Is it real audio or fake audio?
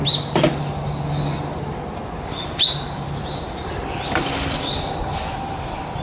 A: real